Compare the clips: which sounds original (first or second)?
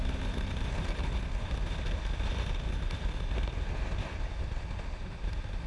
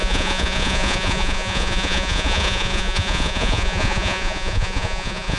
first